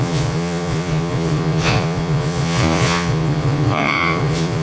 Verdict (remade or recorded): remade